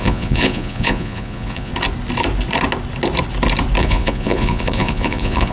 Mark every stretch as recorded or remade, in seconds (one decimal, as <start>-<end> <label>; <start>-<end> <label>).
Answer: 0.0-1.7 remade; 1.7-3.8 recorded; 3.8-5.5 remade